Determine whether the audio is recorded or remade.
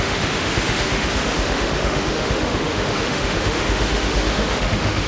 remade